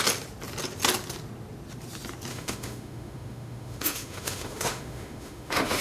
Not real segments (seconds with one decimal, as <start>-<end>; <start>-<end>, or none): 2.3-5.8